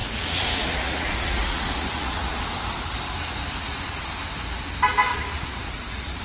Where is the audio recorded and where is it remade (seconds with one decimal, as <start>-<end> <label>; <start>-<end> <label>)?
0.0-2.4 remade; 2.4-3.4 recorded; 3.4-4.1 remade; 4.1-5.1 recorded; 5.1-6.2 remade